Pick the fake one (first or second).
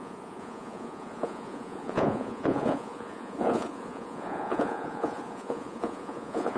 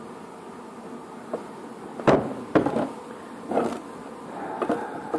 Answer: first